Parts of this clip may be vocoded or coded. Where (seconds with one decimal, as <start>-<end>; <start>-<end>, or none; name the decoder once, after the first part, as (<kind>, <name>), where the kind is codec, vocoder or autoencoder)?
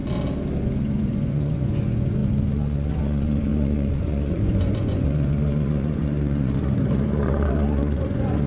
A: 0.6-8.5 (vocoder, Vocos)